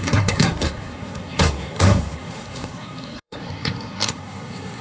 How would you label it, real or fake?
fake